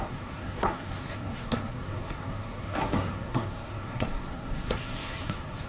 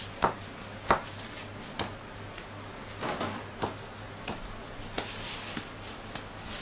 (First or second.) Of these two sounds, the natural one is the second